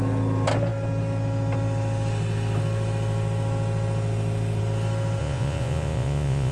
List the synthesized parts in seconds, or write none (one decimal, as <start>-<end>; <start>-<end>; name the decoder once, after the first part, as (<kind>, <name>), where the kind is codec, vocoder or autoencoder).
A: 5.2-6.5 (vocoder, Vocos)